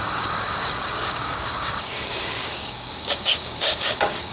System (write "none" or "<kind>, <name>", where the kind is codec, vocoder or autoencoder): codec, DAC